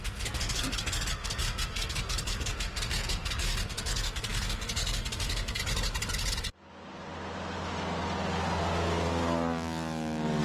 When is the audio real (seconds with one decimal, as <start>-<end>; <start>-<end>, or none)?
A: 5.6-10.4